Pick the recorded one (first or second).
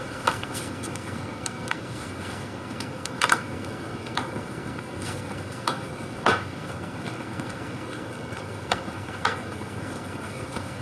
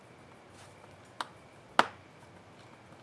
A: second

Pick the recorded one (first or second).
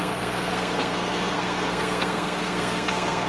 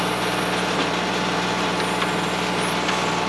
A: second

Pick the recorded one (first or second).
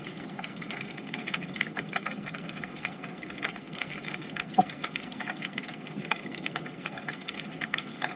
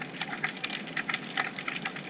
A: second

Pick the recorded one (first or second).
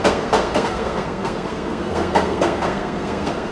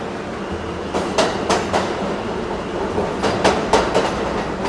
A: second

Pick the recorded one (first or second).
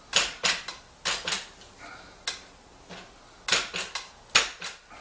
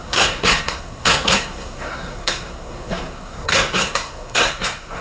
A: first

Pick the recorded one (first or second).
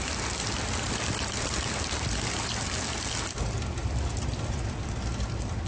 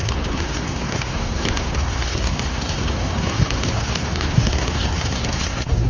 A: first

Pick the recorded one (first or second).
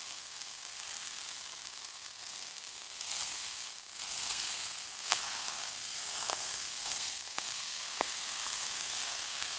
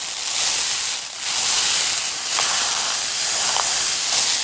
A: second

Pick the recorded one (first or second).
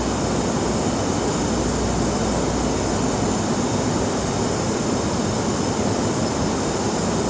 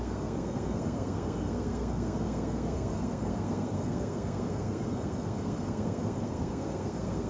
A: first